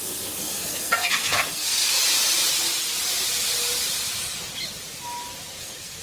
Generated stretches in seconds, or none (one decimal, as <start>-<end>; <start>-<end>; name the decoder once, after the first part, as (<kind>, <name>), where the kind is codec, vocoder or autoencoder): 0.0-2.0 (codec, SNAC); 5.6-6.0